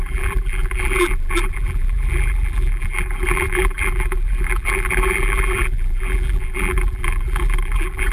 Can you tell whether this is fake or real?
fake